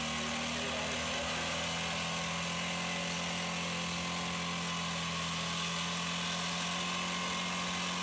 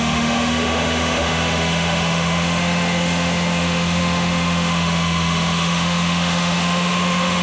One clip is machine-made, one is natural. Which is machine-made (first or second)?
second